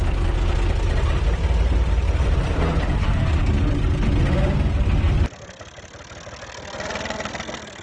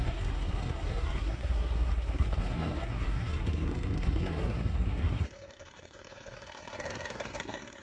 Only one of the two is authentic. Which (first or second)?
first